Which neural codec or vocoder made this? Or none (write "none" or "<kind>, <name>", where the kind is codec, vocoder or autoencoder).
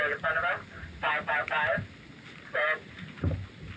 none